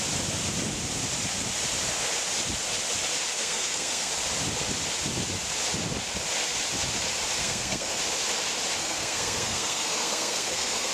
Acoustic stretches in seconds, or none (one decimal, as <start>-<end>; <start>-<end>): 0.0-3.4; 4.1-7.4; 8.0-8.8